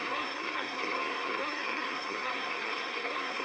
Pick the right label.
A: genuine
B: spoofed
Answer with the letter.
B